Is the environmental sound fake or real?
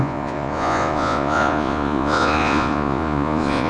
fake